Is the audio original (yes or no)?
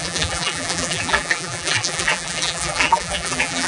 no